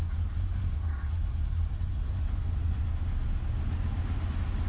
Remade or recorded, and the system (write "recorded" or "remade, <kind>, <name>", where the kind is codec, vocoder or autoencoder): recorded